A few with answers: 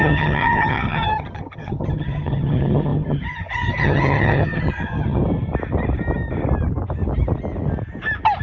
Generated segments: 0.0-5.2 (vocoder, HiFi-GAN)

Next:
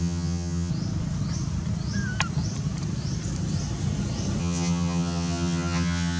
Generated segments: 0.0-0.7 (vocoder, HiFi-GAN); 4.4-6.2